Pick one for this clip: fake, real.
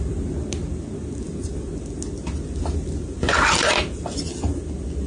real